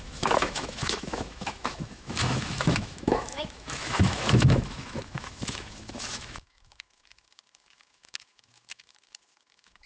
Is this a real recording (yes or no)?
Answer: no